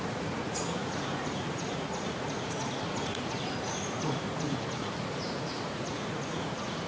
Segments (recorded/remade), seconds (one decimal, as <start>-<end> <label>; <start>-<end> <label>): 0.0-6.9 remade